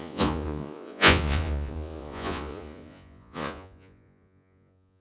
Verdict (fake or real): fake